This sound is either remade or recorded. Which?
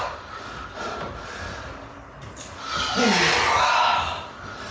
recorded